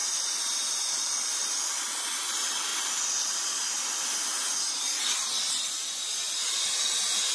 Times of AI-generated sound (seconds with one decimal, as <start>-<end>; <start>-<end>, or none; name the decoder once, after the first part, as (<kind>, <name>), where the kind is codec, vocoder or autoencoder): none

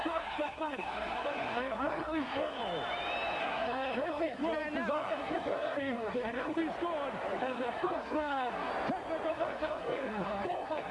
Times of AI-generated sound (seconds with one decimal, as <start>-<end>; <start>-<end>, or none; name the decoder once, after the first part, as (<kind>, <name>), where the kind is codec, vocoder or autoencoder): 0.0-2.6 (codec, SNAC); 3.4-4.4; 4.9-6.6; 7.4-8.7; 9.3-10.9

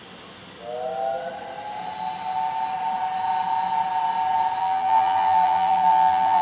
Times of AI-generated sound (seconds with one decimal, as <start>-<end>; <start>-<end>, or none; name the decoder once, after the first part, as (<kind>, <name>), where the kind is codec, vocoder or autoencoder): 4.6-6.4 (vocoder, BigVGAN v2)

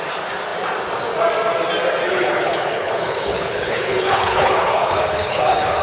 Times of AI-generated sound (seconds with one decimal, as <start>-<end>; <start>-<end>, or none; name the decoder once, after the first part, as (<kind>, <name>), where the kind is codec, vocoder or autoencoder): 2.1-5.8 (codec, HILCodec)

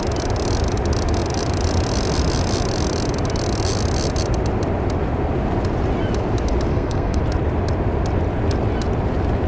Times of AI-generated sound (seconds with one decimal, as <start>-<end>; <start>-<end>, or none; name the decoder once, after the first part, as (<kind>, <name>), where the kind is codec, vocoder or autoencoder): 6.7-7.2 (codec, SNAC)

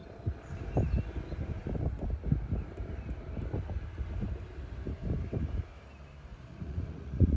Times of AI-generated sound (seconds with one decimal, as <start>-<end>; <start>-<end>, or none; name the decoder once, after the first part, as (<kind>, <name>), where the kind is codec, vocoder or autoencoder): 6.3-7.4 (vocoder, Vocos)

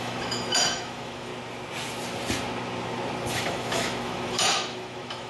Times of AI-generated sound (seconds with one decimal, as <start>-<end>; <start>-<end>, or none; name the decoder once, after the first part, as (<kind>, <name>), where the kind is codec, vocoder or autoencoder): 0.0-1.3 (autoencoder, DAC-VAE); 3.3-5.3

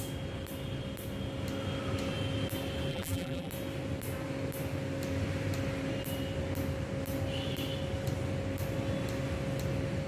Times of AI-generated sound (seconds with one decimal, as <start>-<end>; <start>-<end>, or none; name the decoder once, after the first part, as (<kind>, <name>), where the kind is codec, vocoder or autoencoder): 2.9-3.5 (vocoder, BigVGAN v2)